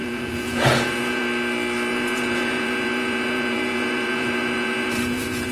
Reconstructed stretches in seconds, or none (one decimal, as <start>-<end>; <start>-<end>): 0.0-1.2; 1.9-5.5